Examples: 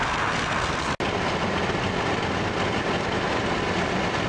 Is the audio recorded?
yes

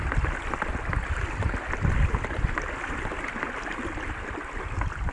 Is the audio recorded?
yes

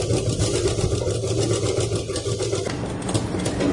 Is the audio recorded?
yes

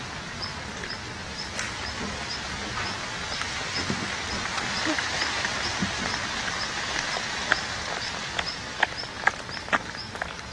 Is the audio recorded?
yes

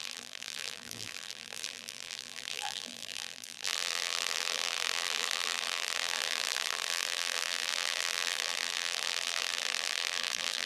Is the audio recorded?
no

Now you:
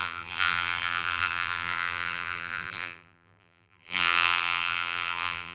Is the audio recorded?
no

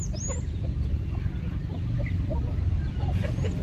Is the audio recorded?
yes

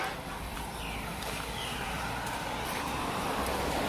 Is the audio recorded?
no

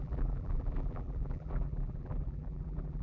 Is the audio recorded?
no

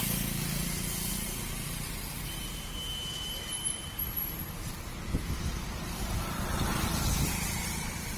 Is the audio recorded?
no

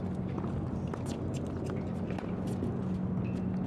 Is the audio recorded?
yes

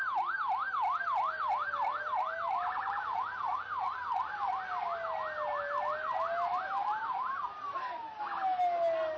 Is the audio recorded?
yes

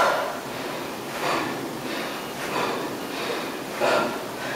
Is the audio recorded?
no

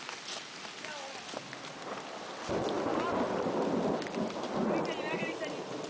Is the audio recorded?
yes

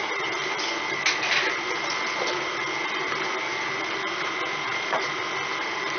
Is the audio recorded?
no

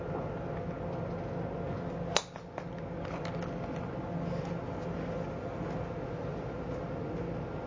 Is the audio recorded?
yes